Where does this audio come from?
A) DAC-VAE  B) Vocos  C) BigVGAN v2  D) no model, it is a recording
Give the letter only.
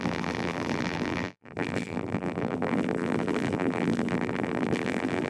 C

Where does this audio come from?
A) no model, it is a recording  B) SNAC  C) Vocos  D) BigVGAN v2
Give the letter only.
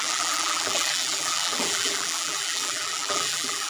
D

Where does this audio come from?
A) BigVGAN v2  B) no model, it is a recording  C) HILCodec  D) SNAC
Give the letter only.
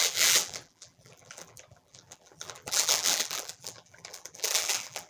A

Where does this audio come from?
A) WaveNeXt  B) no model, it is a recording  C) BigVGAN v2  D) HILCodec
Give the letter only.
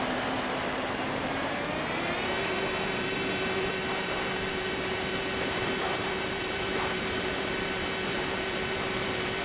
C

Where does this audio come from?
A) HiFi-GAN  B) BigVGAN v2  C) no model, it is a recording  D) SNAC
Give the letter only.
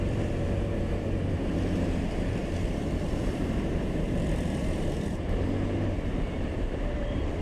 B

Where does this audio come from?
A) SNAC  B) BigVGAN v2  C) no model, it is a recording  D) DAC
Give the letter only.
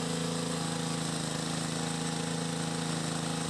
C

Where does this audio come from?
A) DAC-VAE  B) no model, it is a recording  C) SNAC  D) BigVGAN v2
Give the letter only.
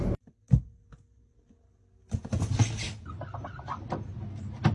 B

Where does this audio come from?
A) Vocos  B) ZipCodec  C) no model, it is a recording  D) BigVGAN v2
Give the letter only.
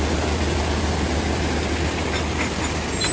C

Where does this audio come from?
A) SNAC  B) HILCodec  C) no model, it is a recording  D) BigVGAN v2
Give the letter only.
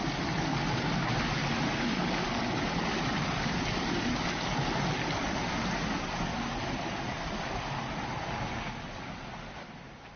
C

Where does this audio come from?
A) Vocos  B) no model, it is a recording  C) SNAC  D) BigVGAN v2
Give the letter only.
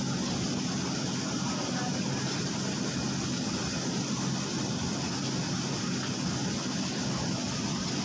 B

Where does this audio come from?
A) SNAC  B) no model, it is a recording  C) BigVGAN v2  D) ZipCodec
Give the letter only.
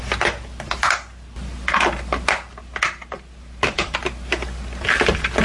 B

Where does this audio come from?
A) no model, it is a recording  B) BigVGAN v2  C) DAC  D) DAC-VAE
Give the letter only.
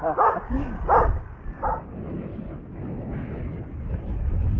A